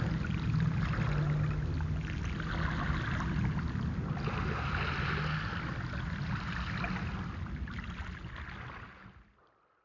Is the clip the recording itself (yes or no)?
yes